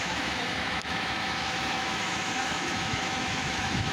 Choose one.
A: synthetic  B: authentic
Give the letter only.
A